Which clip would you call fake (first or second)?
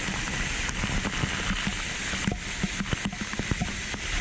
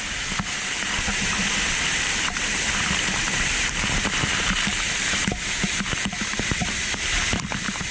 second